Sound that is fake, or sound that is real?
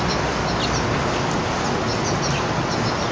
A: real